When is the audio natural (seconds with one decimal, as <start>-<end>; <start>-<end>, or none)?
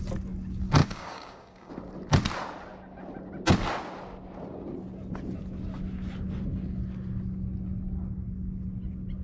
0.0-0.8; 1.7-9.2